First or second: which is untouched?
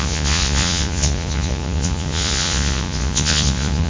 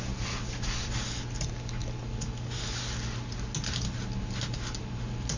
second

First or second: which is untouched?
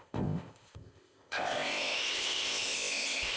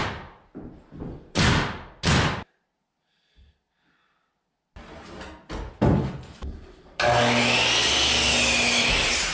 second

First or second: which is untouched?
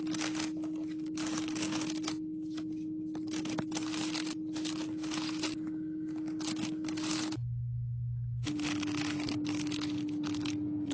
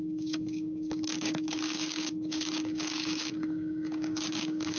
first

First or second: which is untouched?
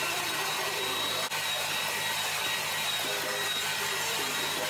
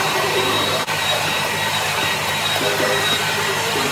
first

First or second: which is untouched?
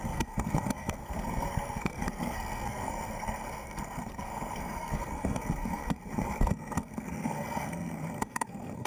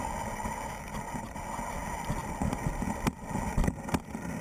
second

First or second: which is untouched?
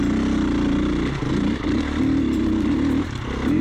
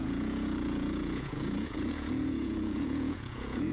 first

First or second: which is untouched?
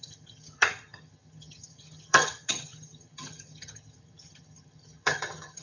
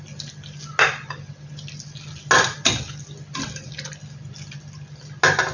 second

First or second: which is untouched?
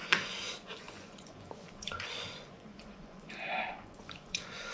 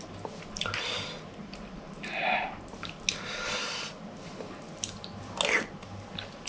second